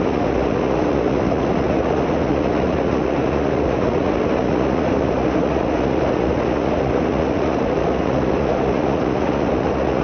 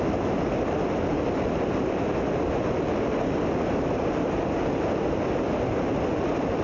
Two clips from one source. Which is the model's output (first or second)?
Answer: first